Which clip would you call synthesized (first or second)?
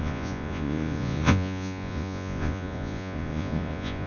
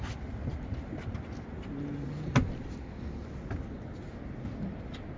first